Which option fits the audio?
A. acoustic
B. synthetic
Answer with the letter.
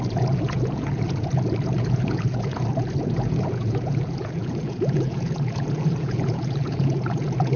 B